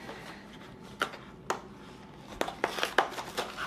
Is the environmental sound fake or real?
real